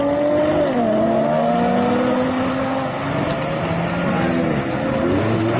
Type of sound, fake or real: real